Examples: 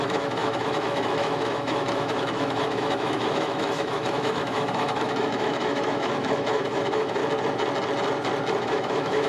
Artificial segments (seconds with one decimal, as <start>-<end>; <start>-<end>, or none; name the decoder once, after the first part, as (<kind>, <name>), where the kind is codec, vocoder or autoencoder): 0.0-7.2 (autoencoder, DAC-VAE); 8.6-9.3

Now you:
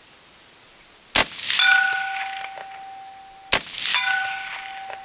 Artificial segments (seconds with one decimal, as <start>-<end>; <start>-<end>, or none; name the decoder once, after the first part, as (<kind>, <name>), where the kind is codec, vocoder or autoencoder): none

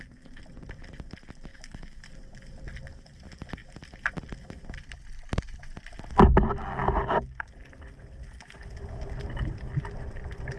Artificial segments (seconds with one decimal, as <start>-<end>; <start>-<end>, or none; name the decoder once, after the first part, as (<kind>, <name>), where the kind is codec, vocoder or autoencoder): 1.5-2.1 (autoencoder, DAC-VAE)